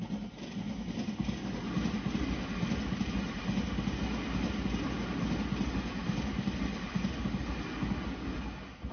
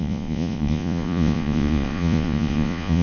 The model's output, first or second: second